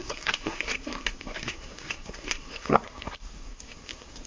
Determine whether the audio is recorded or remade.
remade